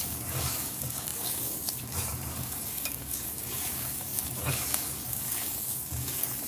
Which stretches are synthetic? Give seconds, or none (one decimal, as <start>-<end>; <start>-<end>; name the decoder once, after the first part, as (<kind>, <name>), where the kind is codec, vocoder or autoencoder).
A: 0.0-6.5 (codec, DAC)